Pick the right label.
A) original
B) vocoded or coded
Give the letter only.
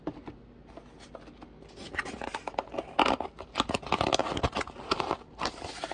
A